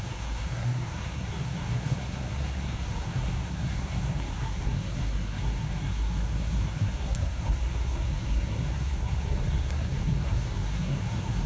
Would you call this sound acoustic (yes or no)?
no